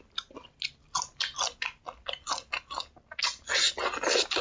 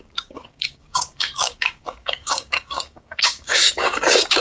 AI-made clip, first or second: second